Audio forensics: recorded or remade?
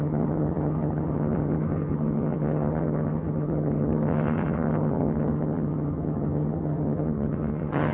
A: remade